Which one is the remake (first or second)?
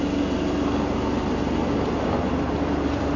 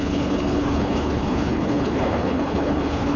second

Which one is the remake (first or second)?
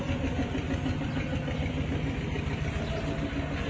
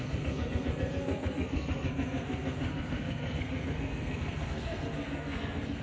second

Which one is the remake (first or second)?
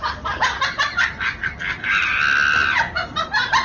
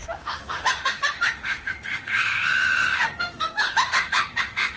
second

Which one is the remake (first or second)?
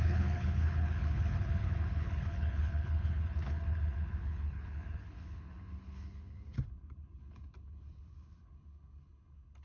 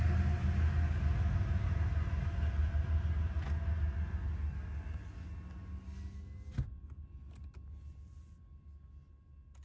first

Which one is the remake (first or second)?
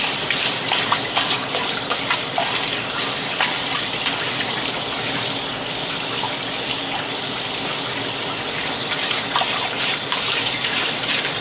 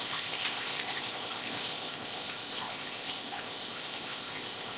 second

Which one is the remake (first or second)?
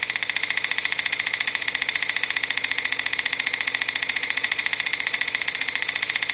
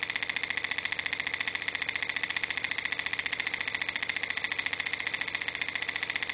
first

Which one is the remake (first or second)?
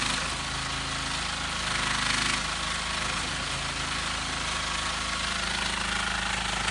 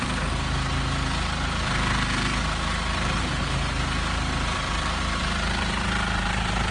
second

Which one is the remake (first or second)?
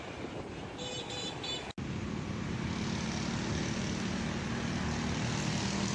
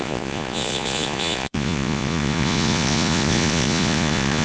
second